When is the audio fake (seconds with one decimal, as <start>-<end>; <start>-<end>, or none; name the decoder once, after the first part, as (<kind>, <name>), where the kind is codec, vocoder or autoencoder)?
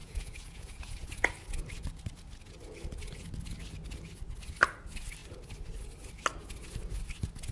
0.0-1.3 (vocoder, Vocos)